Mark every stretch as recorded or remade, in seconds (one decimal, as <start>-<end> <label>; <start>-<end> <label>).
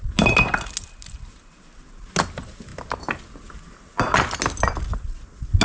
0.0-5.6 recorded